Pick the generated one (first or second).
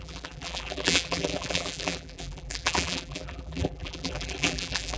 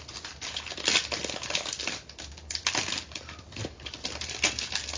first